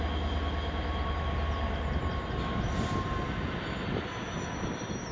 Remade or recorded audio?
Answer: recorded